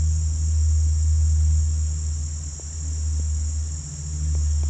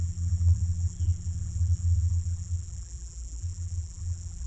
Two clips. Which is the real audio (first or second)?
first